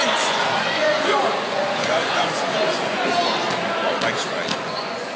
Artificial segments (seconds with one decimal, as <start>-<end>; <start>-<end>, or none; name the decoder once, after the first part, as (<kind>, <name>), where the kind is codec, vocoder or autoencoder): 0.0-3.1 (vocoder, Vocos); 4.5-5.2